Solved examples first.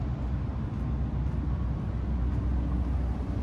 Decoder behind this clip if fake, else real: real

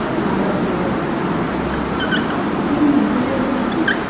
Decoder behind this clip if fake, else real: real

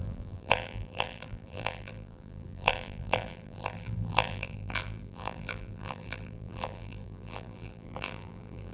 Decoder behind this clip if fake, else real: fake, vocoder, BigVGAN v2